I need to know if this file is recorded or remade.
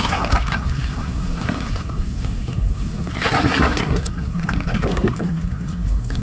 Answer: remade